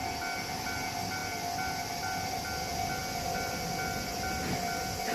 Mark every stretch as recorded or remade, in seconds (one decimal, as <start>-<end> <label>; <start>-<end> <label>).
0.0-5.1 recorded